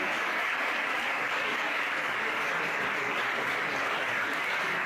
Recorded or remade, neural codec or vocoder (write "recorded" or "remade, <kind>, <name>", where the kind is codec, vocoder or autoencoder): remade, codec, DAC